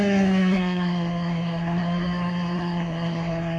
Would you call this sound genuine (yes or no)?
no